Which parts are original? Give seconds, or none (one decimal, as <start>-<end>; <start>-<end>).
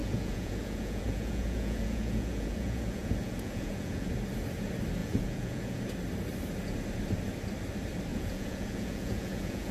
4.1-5.0; 5.8-8.1